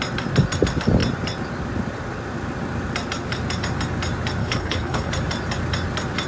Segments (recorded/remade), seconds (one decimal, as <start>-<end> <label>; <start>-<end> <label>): 0.0-4.4 recorded; 4.4-5.1 remade; 5.1-6.3 recorded